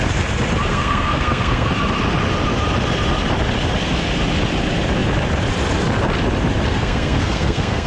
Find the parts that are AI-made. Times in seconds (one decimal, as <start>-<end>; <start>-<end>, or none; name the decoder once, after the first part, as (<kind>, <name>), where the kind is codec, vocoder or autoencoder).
0.7-1.7 (codec, SNAC); 6.7-7.9